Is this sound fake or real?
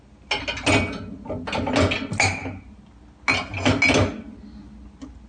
real